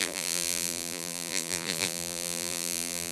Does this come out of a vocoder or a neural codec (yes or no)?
yes